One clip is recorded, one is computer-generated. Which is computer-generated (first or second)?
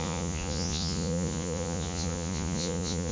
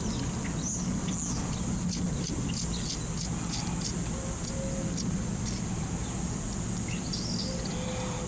first